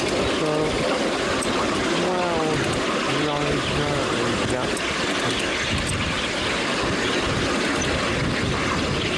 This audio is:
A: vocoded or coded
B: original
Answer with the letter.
B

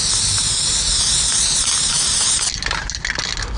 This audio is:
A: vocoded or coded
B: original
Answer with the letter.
B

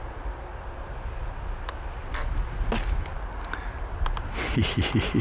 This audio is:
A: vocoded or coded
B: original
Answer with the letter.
B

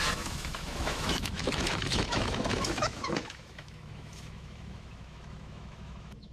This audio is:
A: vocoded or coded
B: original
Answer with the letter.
A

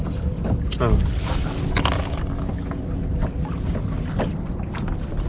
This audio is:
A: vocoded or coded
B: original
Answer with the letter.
B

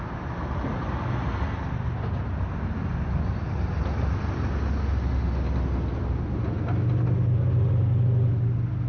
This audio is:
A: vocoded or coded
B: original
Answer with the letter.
B